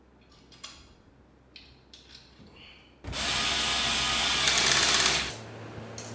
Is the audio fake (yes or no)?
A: no